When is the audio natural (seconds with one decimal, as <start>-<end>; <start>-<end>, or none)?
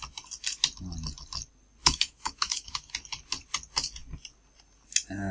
0.0-1.8; 2.9-5.3